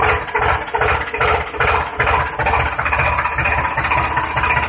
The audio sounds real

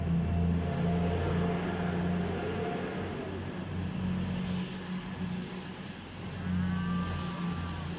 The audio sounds real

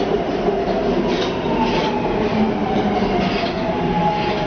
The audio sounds real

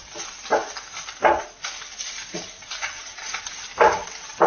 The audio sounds real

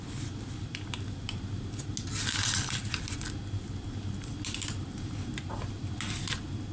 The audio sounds real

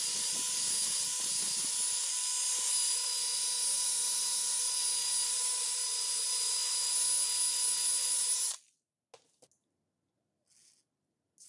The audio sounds real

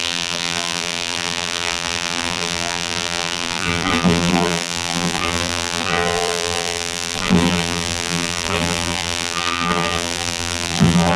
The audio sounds fake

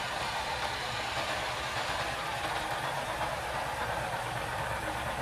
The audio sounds fake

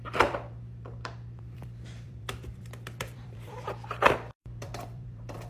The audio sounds fake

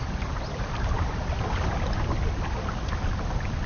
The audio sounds real